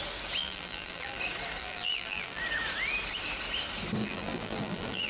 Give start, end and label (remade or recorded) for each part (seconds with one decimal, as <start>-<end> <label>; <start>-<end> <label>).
0.0-0.4 recorded; 0.4-1.2 remade; 1.2-1.6 recorded; 1.6-2.4 remade; 2.4-4.0 recorded; 4.0-5.1 remade